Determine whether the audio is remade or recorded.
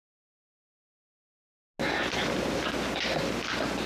recorded